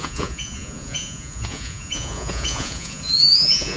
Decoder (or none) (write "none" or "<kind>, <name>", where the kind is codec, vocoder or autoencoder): vocoder, Vocos